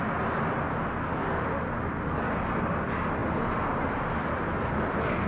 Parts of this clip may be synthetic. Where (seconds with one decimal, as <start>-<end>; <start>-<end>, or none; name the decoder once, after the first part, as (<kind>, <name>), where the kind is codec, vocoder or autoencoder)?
none